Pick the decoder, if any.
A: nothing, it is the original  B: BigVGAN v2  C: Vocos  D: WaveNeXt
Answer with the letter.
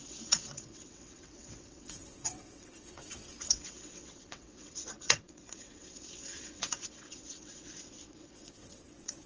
D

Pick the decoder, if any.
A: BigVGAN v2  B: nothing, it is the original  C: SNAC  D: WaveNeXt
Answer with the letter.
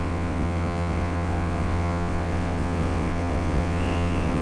D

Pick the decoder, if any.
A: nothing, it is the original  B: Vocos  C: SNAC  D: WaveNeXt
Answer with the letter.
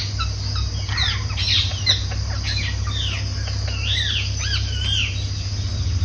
A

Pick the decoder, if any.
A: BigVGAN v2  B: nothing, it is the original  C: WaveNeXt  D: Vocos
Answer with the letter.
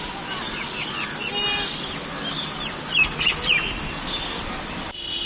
B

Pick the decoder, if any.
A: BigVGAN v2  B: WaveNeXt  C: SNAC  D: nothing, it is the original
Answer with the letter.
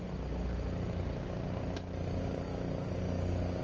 D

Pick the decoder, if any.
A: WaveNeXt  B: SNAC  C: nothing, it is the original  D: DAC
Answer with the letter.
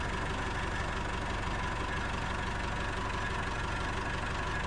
C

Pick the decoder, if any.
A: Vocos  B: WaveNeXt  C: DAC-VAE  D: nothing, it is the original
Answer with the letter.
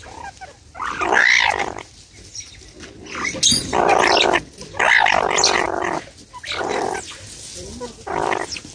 D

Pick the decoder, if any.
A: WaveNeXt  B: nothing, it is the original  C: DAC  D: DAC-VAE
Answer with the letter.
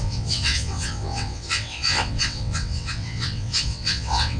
A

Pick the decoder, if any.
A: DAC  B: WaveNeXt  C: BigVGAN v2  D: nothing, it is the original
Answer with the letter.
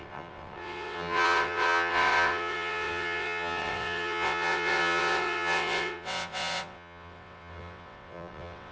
B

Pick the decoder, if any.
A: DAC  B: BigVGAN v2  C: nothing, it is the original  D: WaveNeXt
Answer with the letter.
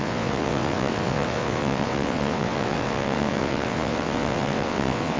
D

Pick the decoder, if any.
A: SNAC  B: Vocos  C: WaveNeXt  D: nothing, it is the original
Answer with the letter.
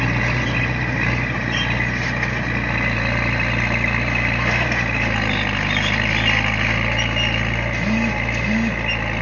D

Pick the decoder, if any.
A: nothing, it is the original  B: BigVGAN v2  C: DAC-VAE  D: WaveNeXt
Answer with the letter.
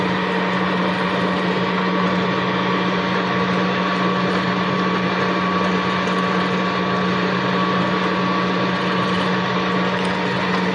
A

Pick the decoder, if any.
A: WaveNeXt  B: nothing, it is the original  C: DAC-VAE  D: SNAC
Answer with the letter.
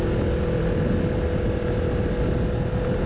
B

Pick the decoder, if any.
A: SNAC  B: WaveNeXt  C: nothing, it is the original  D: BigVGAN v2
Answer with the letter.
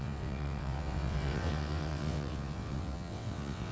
B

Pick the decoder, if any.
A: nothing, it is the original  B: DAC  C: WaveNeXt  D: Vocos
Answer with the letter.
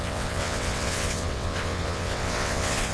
C